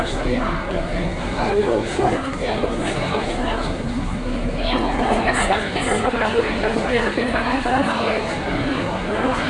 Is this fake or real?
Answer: fake